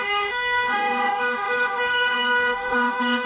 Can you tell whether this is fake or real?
fake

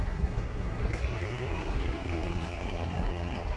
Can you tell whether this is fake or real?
fake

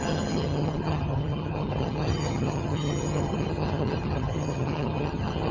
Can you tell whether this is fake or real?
fake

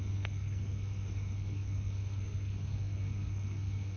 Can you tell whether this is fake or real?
fake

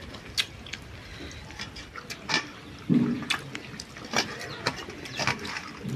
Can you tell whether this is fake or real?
real